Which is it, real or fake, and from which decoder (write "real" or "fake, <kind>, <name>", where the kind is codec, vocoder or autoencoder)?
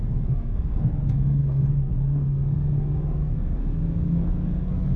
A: fake, codec, SNAC